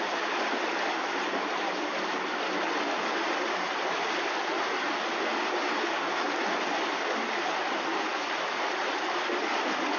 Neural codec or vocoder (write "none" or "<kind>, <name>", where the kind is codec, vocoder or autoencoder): none